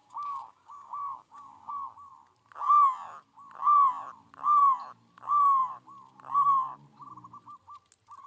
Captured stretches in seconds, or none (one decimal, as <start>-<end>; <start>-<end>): 1.7-8.3